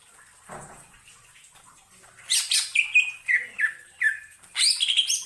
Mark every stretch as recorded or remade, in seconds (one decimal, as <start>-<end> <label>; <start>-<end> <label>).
0.0-5.3 recorded